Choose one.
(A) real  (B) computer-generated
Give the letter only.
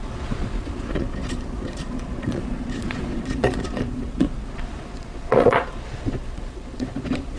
B